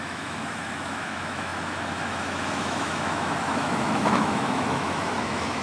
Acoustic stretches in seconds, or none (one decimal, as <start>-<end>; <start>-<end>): none